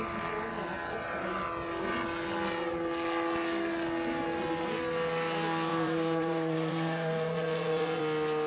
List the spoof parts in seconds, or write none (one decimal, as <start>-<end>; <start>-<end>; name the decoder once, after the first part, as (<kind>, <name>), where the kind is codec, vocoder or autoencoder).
5.7-8.0 (vocoder, Vocos)